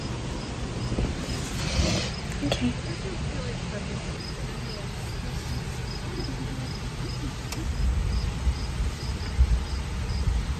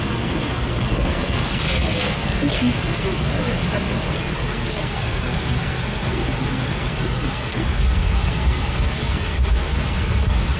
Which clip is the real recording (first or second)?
first